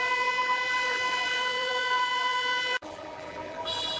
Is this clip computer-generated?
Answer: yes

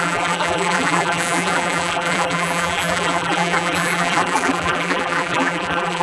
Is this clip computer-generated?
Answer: yes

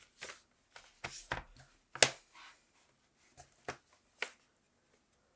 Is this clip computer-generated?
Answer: no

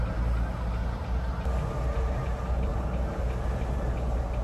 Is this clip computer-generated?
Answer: no